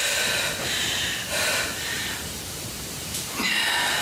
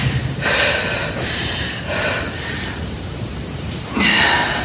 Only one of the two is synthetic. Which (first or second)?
first